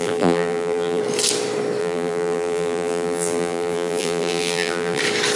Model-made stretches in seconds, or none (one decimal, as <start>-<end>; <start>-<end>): 0.0-1.0; 1.8-5.0